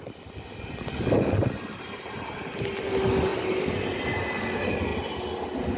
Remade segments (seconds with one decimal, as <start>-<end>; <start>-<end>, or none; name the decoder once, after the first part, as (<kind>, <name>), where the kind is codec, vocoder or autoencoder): none

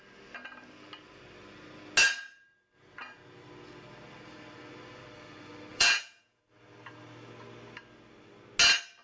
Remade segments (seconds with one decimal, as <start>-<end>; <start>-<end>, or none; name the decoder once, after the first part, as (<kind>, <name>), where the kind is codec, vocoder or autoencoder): 5.7-6.4 (vocoder, Vocos)

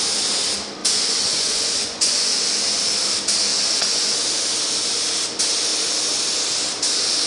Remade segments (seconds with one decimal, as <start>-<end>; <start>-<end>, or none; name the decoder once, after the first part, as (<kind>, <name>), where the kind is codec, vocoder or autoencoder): 0.8-2.4 (vocoder, Vocos); 3.5-4.1

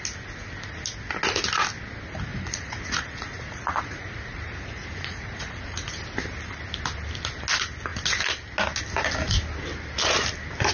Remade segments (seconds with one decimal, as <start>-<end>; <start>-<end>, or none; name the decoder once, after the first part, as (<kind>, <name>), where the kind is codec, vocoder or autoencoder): 2.3-5.9 (vocoder, Vocos)

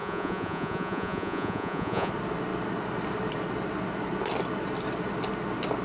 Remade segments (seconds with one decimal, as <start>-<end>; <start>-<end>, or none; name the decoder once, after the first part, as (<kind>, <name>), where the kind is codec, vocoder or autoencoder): 0.0-2.1 (vocoder, Vocos)